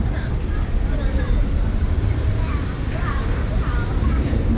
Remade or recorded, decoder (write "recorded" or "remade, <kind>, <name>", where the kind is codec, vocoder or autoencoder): remade, vocoder, BigVGAN v2